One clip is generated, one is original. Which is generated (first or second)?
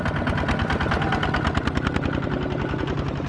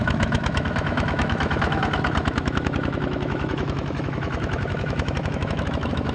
second